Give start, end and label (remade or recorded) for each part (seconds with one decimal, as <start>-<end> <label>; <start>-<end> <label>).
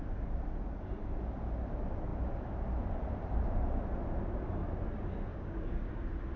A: 0.0-5.3 recorded; 5.3-5.9 remade; 5.9-6.4 recorded